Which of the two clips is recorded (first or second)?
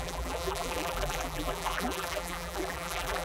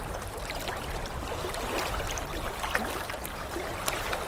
second